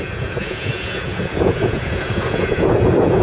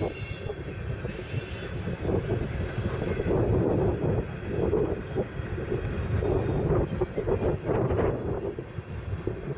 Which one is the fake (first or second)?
first